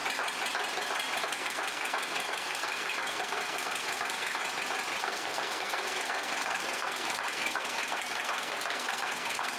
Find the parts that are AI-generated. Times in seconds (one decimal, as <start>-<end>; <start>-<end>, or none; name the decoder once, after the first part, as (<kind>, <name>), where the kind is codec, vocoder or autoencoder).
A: 1.2-4.4 (codec, SNAC); 5.0-9.6